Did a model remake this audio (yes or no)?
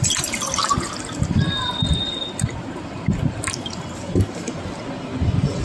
no